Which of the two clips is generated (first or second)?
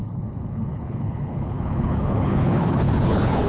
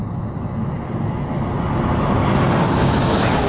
first